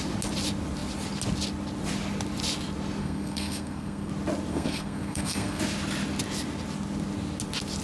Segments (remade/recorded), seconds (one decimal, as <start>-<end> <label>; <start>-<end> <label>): 0.0-3.0 recorded; 3.0-4.1 remade; 4.1-4.5 recorded; 4.5-5.6 remade; 5.6-7.8 recorded